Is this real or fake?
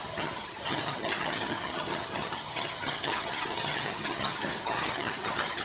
fake